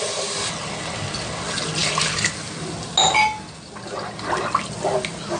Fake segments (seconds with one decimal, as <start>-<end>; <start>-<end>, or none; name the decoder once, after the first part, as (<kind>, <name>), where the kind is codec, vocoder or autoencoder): none